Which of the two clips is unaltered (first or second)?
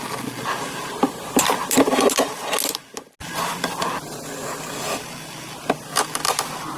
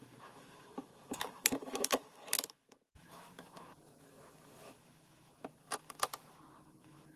first